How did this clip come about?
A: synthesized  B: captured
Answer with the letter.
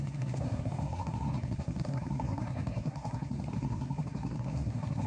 A